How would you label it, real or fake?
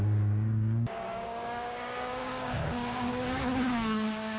fake